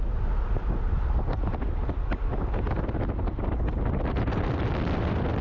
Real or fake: real